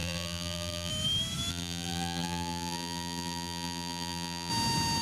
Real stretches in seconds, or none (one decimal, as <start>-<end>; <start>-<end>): 0.9-1.5; 4.5-5.0